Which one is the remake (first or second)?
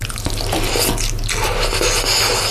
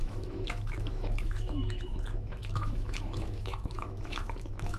second